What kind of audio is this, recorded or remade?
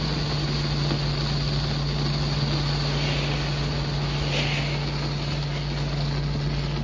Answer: recorded